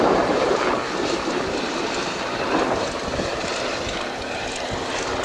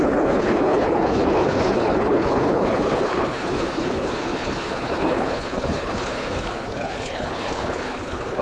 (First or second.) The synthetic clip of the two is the second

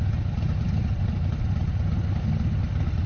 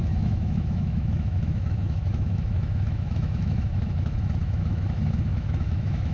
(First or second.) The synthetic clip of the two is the second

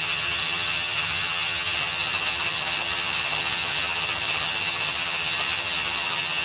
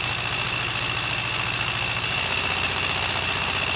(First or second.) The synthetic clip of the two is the first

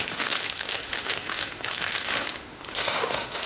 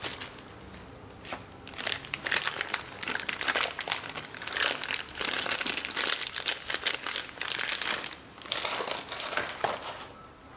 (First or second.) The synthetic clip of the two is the first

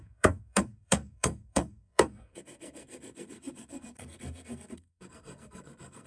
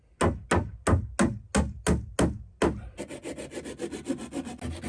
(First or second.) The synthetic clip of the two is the first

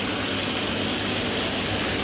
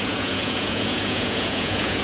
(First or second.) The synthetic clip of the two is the second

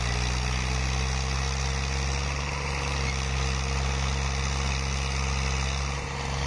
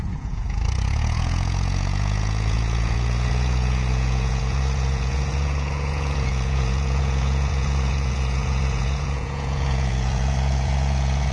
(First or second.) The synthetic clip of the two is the second